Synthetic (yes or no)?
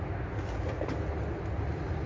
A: no